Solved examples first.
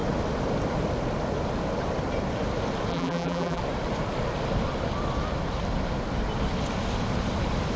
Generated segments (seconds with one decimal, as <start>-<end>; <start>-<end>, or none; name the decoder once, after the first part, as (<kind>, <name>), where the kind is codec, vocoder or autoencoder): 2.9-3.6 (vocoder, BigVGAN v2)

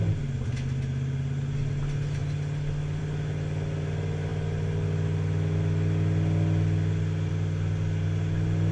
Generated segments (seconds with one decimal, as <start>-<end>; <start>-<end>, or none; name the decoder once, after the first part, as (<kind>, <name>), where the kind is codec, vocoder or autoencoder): none

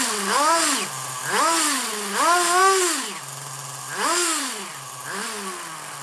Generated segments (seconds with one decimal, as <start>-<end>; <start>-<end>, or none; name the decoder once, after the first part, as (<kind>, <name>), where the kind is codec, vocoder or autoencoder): none

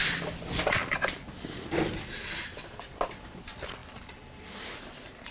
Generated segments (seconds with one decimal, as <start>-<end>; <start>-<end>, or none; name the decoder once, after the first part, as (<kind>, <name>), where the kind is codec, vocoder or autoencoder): none

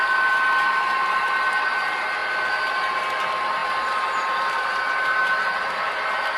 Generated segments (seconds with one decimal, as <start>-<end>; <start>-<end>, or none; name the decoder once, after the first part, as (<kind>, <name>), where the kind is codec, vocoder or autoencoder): none